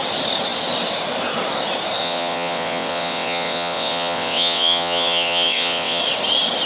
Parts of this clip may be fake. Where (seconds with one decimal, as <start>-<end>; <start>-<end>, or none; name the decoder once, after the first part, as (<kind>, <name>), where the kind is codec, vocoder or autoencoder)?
2.0-6.0 (vocoder, WaveNeXt)